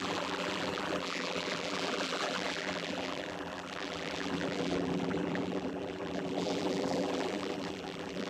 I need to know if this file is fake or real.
fake